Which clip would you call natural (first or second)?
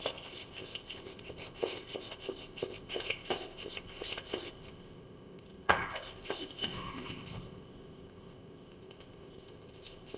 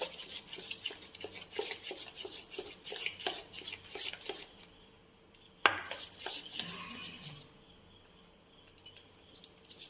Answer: second